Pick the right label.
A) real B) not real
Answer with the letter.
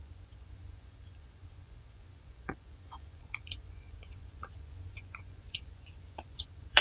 B